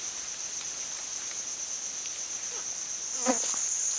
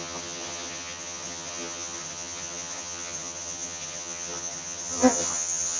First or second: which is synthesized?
second